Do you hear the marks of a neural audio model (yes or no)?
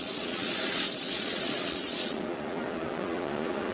yes